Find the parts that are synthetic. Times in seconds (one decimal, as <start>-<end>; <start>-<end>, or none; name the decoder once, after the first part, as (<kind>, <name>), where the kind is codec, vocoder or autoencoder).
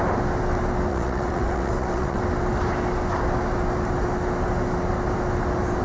0.9-2.2 (vocoder, WaveNeXt)